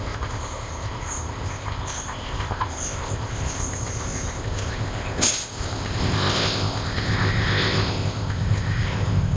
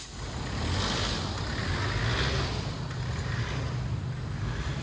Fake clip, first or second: first